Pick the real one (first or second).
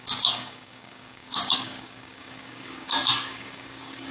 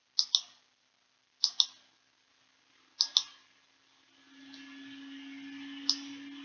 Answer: second